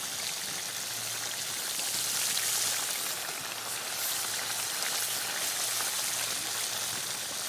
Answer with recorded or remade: recorded